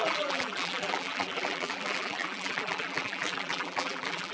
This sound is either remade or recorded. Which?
remade